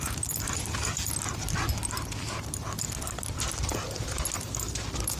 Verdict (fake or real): real